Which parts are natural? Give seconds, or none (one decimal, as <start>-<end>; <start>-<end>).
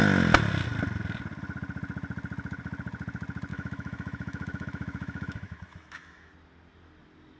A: 0.0-3.5; 6.3-7.4